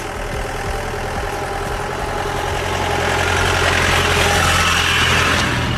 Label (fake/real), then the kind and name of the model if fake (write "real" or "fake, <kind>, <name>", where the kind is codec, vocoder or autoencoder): real